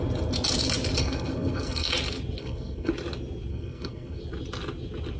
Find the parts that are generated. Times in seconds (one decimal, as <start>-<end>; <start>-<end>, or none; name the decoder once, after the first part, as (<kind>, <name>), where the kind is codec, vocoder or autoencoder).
1.0-1.9 (codec, SNAC); 2.4-2.9; 3.5-4.2